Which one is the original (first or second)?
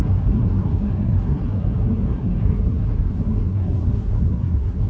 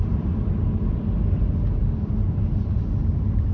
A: second